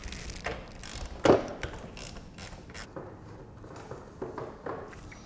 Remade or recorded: recorded